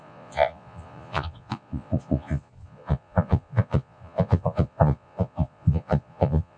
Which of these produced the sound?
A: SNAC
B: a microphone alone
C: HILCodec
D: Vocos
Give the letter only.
D